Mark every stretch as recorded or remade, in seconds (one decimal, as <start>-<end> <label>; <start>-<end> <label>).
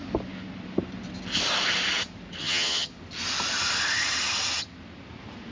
0.0-2.4 recorded; 2.4-2.9 remade; 2.9-5.5 recorded